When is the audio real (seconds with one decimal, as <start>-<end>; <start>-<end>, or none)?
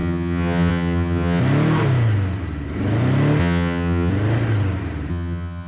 1.4-3.4; 4.1-5.1